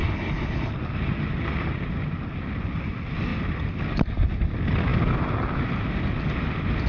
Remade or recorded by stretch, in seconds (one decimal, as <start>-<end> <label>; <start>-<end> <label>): 0.0-0.7 remade; 0.7-6.9 recorded